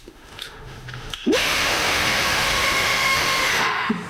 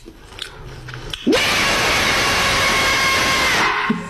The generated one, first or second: first